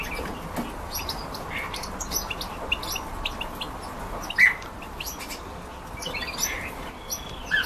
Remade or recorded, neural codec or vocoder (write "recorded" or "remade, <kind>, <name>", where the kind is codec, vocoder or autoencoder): recorded